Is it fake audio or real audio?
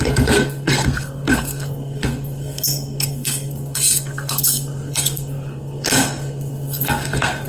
fake